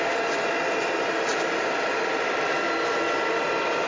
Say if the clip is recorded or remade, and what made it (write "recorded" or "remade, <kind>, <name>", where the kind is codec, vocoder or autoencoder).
recorded